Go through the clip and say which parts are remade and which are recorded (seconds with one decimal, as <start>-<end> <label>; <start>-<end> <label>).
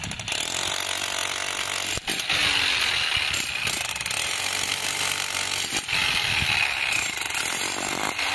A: 0.0-8.3 recorded